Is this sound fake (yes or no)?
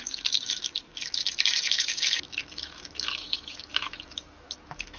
yes